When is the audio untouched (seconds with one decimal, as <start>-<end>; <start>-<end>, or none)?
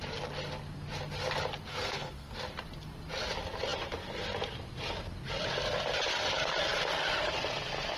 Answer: 0.0-1.7; 2.4-8.0